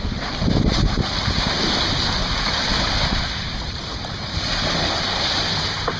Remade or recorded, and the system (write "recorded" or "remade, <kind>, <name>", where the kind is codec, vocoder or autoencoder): remade, vocoder, BigVGAN v2